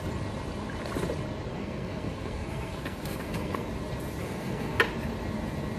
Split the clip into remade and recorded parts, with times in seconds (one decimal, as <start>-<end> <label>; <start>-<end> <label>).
0.0-1.5 recorded; 1.5-3.7 remade; 3.7-4.2 recorded; 4.2-4.8 remade; 4.8-5.8 recorded